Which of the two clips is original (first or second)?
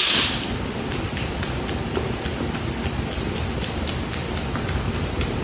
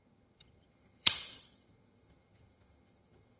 first